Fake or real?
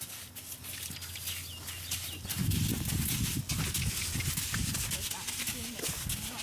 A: real